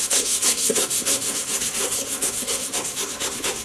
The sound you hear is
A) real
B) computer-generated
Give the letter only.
B